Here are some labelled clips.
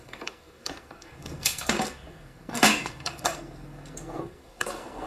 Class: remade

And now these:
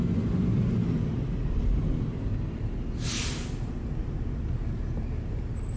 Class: recorded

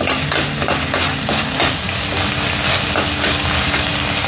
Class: recorded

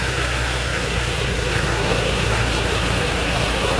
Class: remade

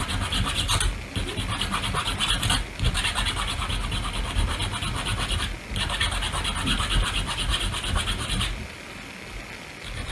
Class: recorded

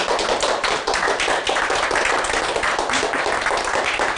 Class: recorded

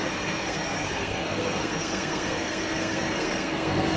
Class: remade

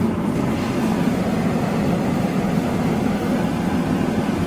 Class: recorded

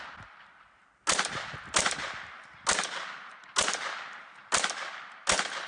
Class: recorded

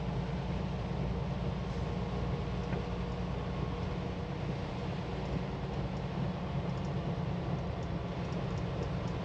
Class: recorded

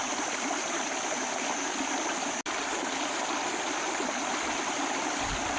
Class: recorded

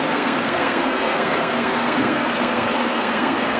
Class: remade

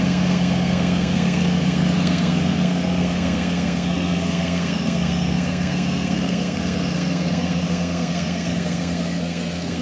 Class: remade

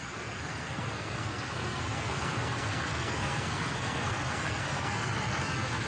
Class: remade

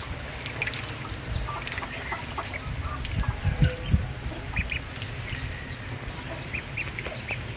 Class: recorded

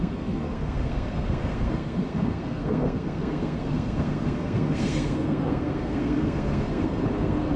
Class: remade